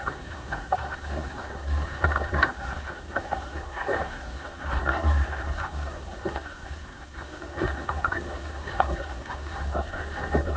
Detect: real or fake fake